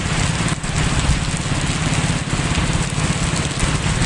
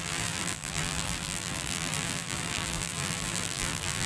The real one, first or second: first